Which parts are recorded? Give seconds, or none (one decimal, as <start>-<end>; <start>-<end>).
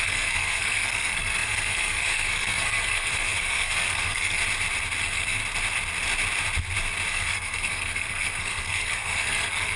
4.4-5.0; 5.4-7.1